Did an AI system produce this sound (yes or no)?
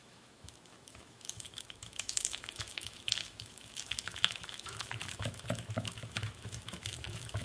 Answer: yes